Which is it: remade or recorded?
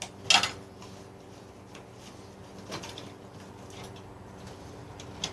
recorded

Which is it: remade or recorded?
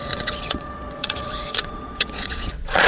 remade